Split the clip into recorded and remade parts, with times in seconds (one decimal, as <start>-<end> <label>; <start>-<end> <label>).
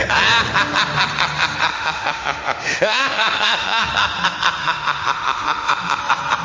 0.0-1.7 recorded; 1.7-3.9 remade; 3.9-4.6 recorded; 4.6-6.0 remade; 6.0-6.4 recorded